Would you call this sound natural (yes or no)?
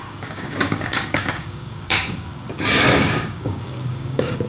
no